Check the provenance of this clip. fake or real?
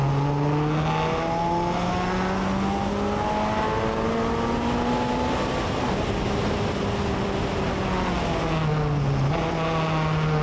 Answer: real